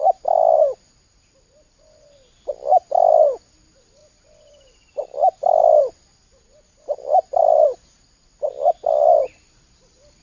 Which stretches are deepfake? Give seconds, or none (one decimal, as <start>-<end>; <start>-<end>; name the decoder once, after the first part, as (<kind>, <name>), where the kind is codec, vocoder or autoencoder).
none